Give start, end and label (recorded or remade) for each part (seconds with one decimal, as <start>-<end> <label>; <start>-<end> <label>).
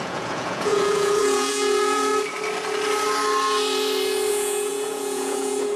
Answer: 0.0-2.1 remade; 2.1-4.3 recorded; 4.3-5.8 remade